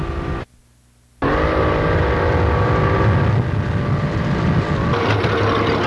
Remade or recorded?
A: recorded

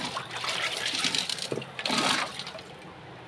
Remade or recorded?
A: recorded